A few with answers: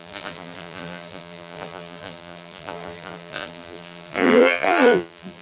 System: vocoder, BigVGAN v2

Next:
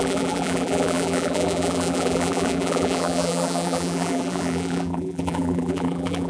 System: vocoder, BigVGAN v2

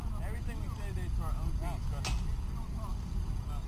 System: none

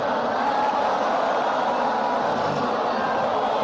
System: none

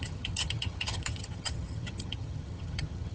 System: vocoder, HiFi-GAN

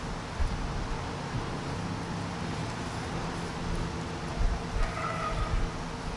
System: none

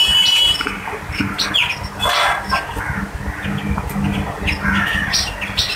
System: none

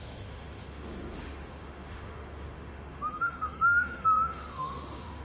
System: autoencoder, DAC-VAE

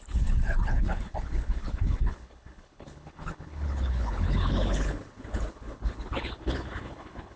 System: codec, HILCodec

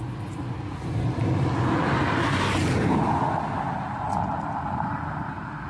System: none